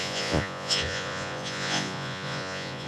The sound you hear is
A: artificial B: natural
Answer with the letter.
A